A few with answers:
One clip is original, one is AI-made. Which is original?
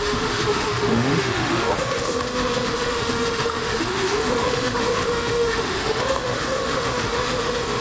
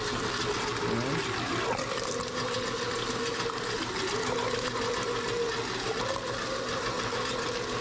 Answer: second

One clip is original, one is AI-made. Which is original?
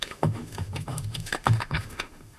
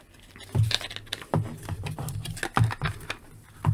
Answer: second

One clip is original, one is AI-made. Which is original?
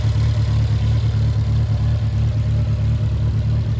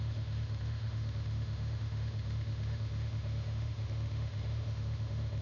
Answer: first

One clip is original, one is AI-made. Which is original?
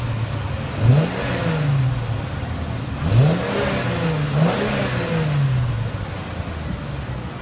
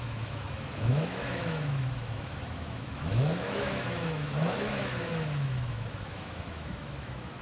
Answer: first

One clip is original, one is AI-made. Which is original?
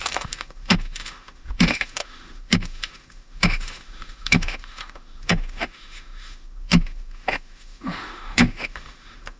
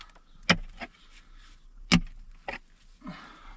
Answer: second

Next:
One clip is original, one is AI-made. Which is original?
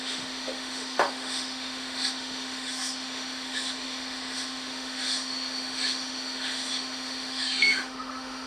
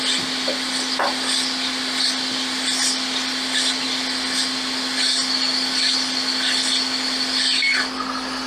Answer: second